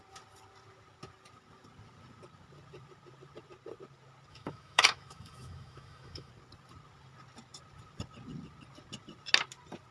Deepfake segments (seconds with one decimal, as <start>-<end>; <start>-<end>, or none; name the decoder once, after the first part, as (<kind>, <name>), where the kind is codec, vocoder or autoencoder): 4.3-6.3 (autoencoder, DAC-VAE)